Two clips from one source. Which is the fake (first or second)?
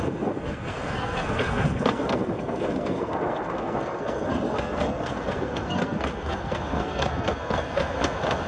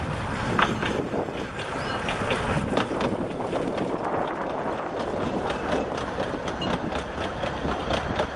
first